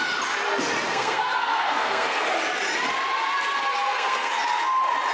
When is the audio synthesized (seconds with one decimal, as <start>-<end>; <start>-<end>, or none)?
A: 0.9-2.3; 3.7-4.3